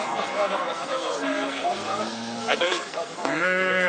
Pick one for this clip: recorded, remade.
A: remade